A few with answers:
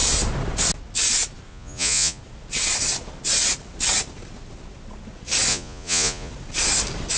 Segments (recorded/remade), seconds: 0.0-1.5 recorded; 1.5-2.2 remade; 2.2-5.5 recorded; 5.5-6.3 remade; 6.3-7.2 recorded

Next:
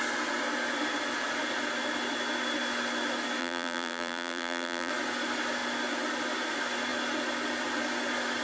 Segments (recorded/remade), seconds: 0.0-3.4 recorded; 3.4-4.9 remade; 4.9-8.4 recorded

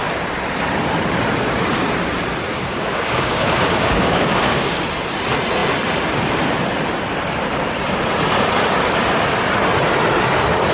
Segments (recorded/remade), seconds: 0.0-2.5 recorded; 2.5-4.7 remade; 4.7-10.7 recorded

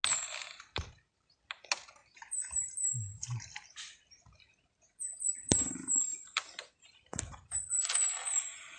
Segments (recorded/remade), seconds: 0.0-0.4 recorded; 0.4-1.3 remade; 1.3-2.0 recorded; 2.0-7.2 remade; 7.2-8.8 recorded